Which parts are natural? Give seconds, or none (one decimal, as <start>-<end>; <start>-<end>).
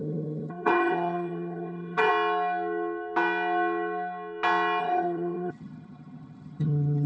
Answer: 2.1-4.8